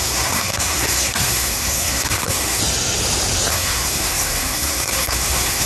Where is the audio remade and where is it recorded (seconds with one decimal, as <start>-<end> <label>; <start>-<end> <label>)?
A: 0.0-2.6 remade; 2.6-3.5 recorded; 3.5-5.7 remade